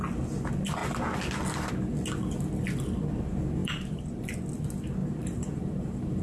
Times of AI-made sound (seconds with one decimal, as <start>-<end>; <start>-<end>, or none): 3.6-4.4; 5.0-6.2